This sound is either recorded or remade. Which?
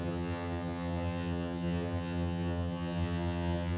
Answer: remade